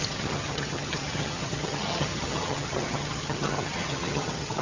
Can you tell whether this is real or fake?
fake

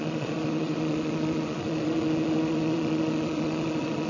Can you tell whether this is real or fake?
fake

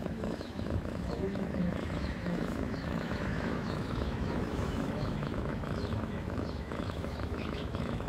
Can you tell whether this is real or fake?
fake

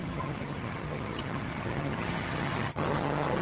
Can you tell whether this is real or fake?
fake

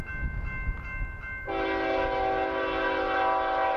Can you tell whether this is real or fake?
real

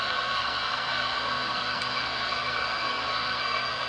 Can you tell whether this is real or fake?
fake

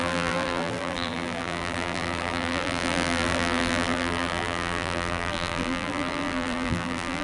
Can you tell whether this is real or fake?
fake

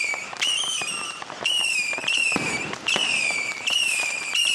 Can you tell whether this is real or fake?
fake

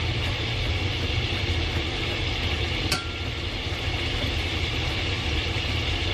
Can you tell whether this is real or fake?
real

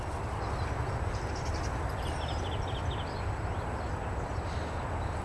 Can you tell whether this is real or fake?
real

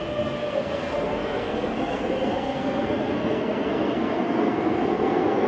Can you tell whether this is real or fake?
fake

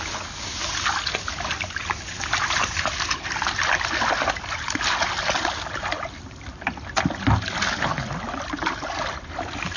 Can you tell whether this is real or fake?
real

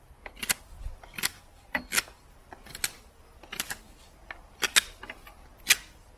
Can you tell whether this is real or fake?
real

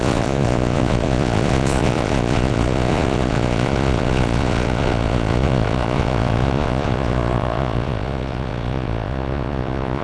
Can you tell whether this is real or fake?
fake